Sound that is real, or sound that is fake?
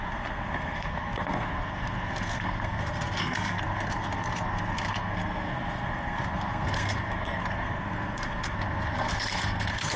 fake